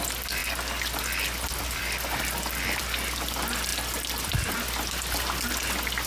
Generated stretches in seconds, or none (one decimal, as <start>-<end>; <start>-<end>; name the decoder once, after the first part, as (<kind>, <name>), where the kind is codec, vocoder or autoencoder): none